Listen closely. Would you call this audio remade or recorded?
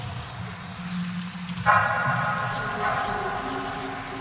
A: recorded